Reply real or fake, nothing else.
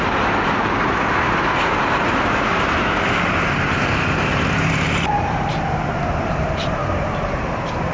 fake